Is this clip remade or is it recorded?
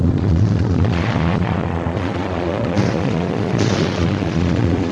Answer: remade